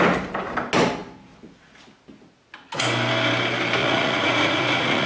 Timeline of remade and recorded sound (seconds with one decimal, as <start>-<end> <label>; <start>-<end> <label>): 0.0-3.8 recorded; 3.8-5.1 remade